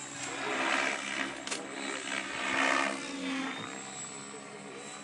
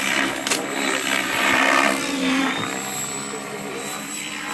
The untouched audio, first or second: first